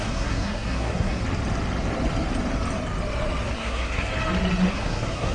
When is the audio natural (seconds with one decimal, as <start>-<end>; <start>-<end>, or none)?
1.2-3.5; 4.1-4.7